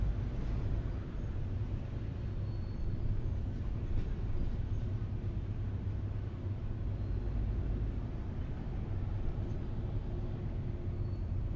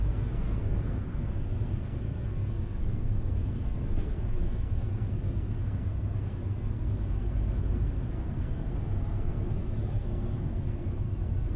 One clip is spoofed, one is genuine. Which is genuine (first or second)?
first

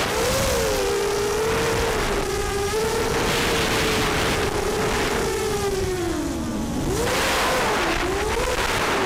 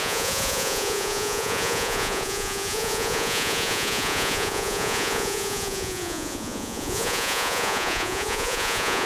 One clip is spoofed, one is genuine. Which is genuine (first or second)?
first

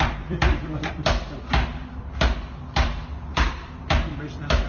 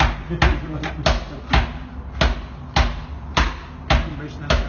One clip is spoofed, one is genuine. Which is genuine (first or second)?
second